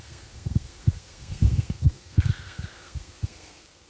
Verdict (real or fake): fake